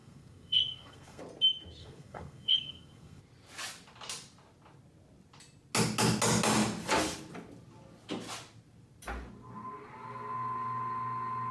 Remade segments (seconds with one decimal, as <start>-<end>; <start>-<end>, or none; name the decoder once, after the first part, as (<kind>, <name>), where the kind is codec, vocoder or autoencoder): 0.0-1.2 (codec, SNAC); 1.8-3.2